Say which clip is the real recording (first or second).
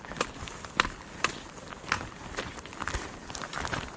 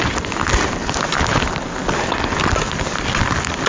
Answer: second